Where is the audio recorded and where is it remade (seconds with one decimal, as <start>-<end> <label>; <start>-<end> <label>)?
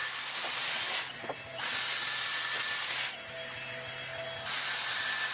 0.0-5.3 recorded